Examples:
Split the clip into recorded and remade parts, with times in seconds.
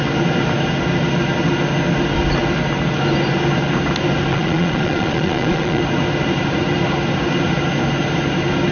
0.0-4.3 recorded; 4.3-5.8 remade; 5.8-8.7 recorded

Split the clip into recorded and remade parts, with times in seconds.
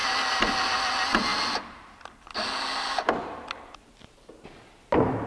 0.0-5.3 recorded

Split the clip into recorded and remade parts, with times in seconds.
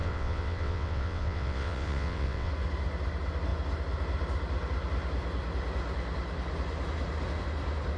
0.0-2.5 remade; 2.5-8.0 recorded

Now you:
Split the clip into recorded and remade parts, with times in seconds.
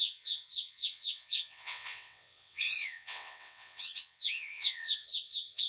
0.0-5.7 remade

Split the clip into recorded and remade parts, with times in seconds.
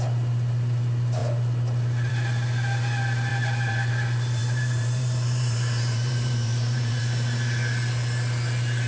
0.0-3.3 recorded; 3.3-3.9 remade; 3.9-4.4 recorded; 4.4-7.0 remade; 7.0-8.9 recorded